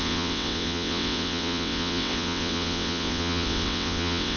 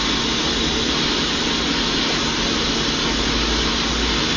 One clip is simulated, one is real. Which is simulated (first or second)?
first